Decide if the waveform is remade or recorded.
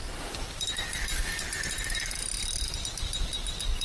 recorded